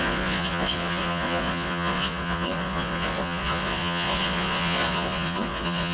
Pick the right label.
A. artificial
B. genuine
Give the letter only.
A